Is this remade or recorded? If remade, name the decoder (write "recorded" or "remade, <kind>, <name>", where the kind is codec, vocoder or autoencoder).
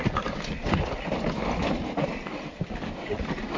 recorded